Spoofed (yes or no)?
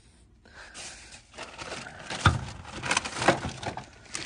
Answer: no